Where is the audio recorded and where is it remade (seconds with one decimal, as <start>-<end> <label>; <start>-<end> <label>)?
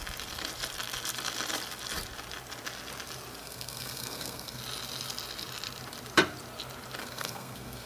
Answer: 0.0-3.4 recorded; 3.4-4.6 remade; 4.6-7.0 recorded; 7.0-7.9 remade